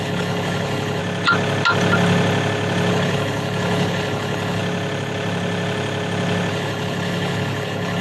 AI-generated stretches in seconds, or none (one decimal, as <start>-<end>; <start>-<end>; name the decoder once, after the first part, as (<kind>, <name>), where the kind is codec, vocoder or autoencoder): 0.0-1.0 (codec, HILCodec); 2.9-4.6; 6.5-8.0